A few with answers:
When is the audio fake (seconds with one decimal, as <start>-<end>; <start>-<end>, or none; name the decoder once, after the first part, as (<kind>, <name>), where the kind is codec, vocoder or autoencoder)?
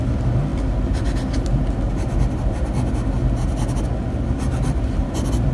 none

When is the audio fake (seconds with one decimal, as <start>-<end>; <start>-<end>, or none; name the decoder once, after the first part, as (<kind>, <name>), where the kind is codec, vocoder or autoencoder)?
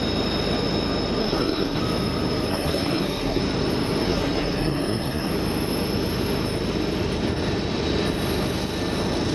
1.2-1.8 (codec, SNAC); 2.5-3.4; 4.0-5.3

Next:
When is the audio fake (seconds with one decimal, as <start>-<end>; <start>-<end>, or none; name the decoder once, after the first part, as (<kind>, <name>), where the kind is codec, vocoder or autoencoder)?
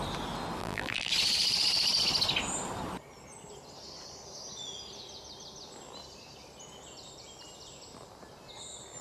0.6-1.1 (vocoder, BigVGAN v2)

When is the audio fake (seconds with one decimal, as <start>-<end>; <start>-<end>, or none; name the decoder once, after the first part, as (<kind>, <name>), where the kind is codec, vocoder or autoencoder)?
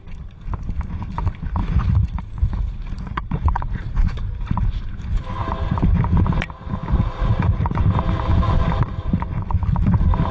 1.6-4.8 (vocoder, Vocos); 6.9-7.8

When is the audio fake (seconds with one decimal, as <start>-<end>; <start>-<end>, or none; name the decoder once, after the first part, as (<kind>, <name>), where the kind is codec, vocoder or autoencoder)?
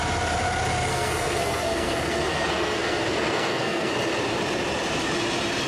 0.9-3.9 (codec, SNAC)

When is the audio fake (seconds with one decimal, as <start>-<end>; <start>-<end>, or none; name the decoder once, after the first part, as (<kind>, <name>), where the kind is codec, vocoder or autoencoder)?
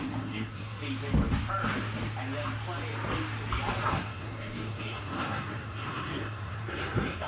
0.0-0.8 (codec, SNAC); 3.9-7.3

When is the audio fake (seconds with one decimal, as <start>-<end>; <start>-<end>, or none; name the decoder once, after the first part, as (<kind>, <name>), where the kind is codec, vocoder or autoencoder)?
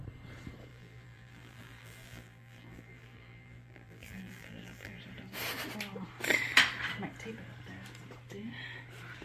0.7-5.0 (vocoder, BigVGAN v2)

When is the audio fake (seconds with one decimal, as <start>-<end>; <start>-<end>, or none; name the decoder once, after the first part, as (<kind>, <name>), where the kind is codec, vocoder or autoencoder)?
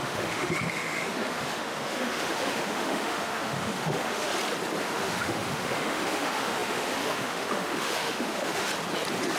0.0-4.3 (autoencoder, DAC-VAE); 4.8-8.7